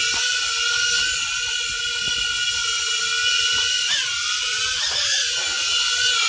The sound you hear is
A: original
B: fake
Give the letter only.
A